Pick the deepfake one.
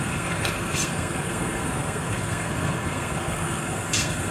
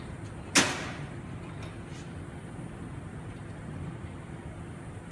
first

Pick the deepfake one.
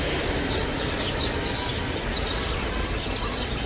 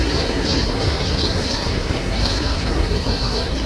second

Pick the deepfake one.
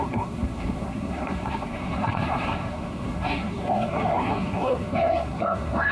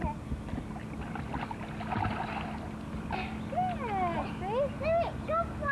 first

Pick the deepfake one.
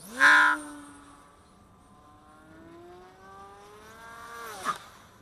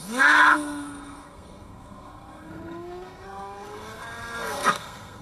second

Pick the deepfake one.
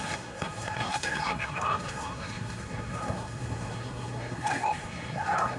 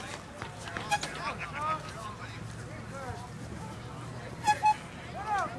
first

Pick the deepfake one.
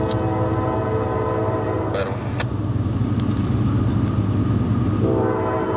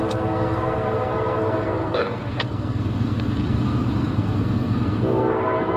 second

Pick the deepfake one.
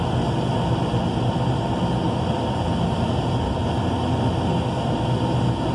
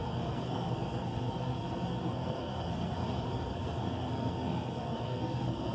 second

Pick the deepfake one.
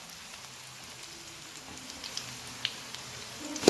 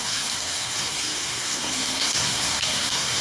second